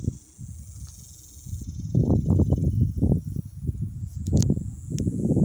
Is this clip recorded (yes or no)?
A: yes